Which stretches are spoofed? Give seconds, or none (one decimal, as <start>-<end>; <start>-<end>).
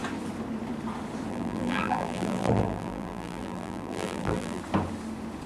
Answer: 1.3-4.6